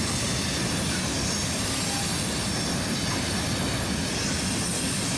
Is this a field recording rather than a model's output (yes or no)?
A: yes